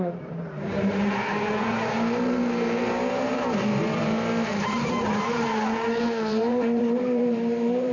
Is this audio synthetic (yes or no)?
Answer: yes